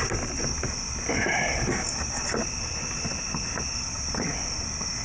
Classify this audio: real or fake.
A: real